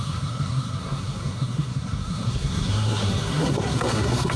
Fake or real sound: fake